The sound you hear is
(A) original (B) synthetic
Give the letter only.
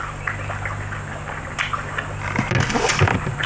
A